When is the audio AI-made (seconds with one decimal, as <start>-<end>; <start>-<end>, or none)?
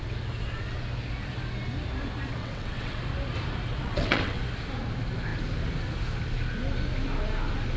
2.4-3.0; 3.7-4.4